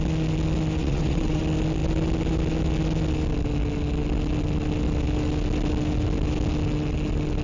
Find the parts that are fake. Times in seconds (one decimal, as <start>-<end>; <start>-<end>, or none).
0.8-1.4